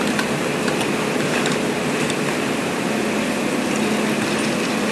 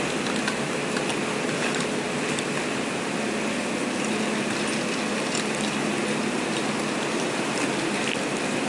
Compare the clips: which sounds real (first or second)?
second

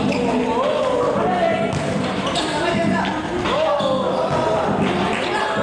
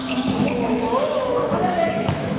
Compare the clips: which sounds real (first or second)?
first